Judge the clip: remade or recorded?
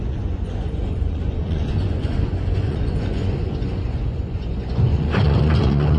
remade